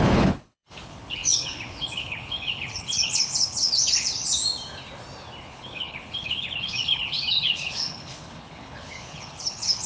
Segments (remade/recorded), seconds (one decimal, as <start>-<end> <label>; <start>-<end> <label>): 0.0-4.4 remade; 4.4-5.4 recorded; 5.4-9.9 remade